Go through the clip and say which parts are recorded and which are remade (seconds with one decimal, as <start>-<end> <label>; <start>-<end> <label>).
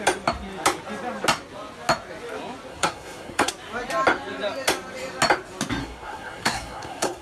0.0-2.7 recorded; 2.7-3.5 remade; 3.5-5.8 recorded; 5.8-7.2 remade